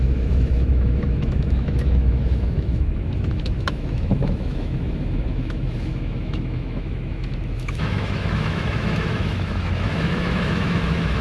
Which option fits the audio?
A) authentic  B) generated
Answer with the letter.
B